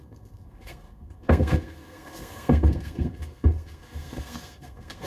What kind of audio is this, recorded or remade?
remade